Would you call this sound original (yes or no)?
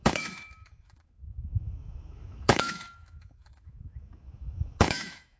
no